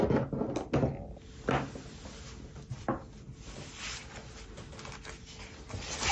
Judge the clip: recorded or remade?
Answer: recorded